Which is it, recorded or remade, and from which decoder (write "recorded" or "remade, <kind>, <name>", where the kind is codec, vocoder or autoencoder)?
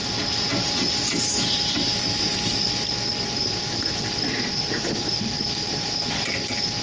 recorded